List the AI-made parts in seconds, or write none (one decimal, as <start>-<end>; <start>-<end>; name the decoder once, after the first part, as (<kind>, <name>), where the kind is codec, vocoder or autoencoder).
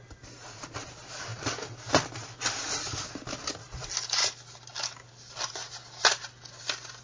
none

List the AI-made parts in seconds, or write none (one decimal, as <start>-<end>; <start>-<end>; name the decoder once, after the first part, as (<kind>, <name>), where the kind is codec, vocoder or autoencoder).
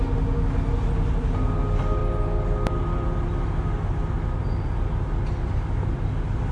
none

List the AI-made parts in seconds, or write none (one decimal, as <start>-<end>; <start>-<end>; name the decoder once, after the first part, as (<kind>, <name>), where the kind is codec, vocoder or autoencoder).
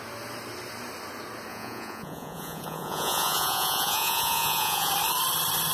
1.5-4.9 (vocoder, Vocos)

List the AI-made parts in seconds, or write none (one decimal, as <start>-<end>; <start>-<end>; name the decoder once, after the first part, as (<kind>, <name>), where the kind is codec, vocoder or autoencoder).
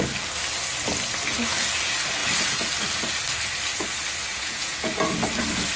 4.3-4.9 (vocoder, Vocos)